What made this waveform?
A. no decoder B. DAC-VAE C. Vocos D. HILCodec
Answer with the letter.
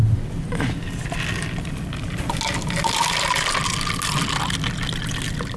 A